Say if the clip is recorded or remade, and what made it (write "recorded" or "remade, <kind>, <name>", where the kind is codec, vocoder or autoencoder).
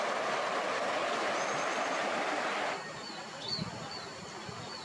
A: recorded